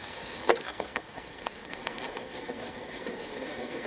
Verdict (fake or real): fake